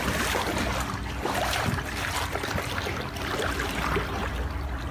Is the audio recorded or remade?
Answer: remade